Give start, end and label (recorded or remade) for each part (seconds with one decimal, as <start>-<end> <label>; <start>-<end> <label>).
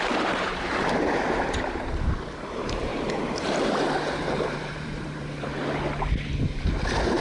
0.0-5.6 remade; 5.6-6.4 recorded; 6.4-7.2 remade